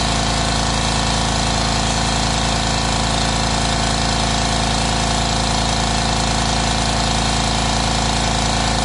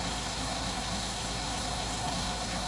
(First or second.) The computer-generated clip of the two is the second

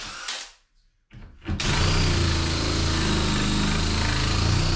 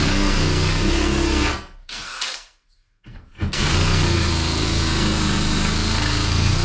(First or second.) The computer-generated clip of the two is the second